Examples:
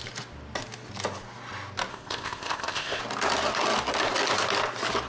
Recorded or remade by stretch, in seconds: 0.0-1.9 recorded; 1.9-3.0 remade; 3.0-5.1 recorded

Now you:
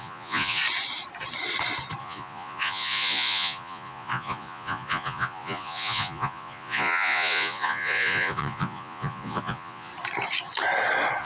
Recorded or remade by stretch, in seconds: 0.0-0.6 remade; 0.6-2.0 recorded; 2.0-9.9 remade; 9.9-11.2 recorded

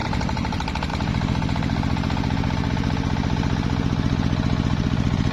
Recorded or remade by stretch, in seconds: 0.0-0.9 remade; 0.9-5.3 recorded